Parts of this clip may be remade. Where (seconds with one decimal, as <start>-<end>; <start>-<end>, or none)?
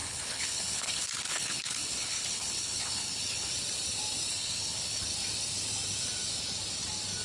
0.0-3.5; 4.3-5.0